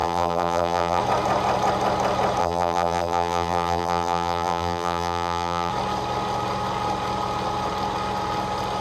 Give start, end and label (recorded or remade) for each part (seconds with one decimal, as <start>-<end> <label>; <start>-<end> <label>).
0.0-1.0 remade; 1.0-2.4 recorded; 2.4-5.7 remade; 5.7-8.8 recorded